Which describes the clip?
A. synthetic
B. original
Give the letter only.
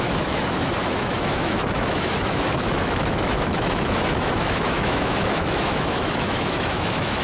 A